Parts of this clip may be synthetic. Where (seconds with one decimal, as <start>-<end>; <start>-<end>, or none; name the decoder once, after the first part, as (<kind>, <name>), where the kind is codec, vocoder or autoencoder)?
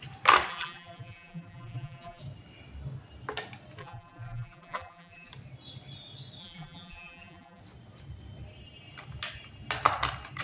0.5-2.2 (vocoder, BigVGAN v2); 3.8-5.3; 6.4-7.6